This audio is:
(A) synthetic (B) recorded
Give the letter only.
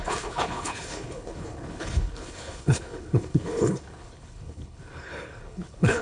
A